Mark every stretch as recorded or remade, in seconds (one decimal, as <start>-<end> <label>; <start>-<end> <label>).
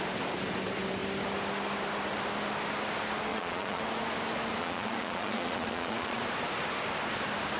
0.0-3.3 recorded; 3.3-3.8 remade; 3.8-4.6 recorded; 4.6-6.2 remade; 6.2-7.6 recorded